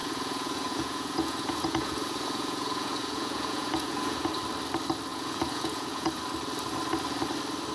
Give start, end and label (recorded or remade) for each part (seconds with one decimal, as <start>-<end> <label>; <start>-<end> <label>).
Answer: 0.0-4.3 remade; 4.3-5.1 recorded; 5.1-6.2 remade; 6.2-7.7 recorded